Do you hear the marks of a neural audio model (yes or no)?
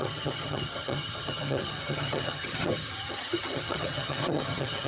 yes